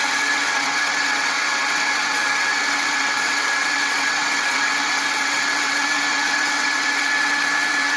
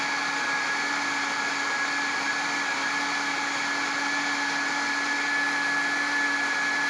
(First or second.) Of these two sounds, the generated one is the first